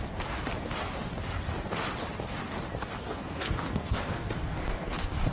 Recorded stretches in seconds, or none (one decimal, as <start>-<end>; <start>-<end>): 0.0-3.0